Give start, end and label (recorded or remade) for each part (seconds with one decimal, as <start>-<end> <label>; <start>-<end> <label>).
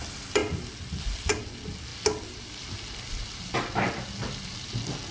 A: 0.0-5.1 recorded